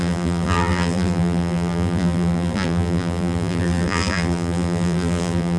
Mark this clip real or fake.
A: fake